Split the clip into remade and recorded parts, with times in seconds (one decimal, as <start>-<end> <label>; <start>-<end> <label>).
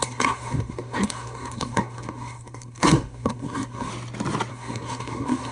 0.0-3.9 remade; 3.9-4.5 recorded; 4.5-5.5 remade